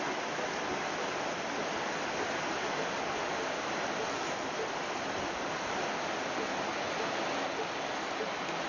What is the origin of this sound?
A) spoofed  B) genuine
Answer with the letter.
B